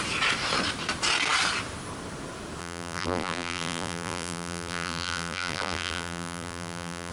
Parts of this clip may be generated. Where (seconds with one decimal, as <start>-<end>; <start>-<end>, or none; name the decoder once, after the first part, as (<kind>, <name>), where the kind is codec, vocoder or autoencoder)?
2.6-7.1 (vocoder, BigVGAN v2)